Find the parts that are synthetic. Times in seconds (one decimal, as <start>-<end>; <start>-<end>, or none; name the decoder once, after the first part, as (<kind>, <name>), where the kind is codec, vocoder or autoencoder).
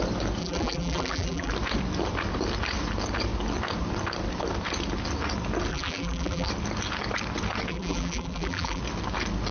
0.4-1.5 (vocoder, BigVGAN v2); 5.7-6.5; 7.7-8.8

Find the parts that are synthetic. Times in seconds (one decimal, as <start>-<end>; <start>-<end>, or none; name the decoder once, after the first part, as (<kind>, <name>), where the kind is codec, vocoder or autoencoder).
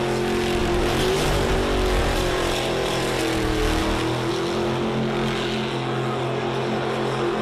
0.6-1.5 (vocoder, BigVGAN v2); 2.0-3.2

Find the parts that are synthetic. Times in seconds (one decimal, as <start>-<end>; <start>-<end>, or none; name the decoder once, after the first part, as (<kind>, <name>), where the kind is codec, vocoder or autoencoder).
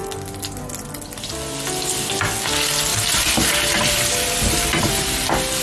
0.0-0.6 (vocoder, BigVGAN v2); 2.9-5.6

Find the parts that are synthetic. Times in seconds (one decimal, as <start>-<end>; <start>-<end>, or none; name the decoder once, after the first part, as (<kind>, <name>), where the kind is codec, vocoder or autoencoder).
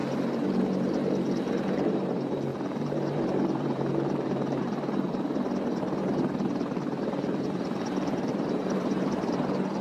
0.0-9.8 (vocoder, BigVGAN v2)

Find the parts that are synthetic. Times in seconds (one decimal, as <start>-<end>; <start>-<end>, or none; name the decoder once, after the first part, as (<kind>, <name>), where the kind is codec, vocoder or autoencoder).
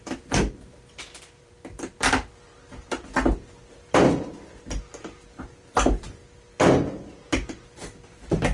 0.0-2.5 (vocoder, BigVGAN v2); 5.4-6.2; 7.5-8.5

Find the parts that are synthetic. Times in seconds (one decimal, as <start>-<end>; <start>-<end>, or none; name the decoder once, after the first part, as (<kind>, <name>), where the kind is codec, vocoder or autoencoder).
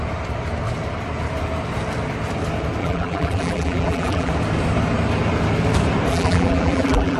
2.8-4.3 (vocoder, BigVGAN v2); 6.1-7.2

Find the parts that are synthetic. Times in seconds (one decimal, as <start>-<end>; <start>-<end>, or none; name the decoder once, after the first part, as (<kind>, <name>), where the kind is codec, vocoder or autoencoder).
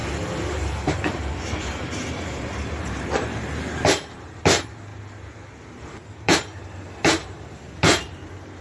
0.0-4.9 (vocoder, BigVGAN v2); 5.8-8.6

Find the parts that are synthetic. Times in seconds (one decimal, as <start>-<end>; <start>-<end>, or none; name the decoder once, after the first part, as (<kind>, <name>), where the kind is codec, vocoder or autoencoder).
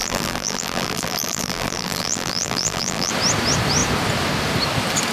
0.0-3.1 (vocoder, BigVGAN v2)